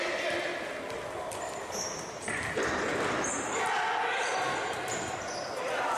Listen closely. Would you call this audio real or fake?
real